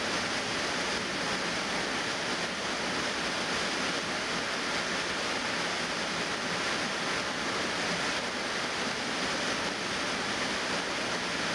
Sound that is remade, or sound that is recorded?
recorded